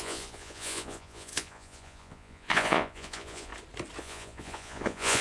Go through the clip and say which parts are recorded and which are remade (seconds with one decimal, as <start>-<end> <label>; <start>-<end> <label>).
0.0-3.5 remade; 3.5-4.0 recorded; 4.0-5.2 remade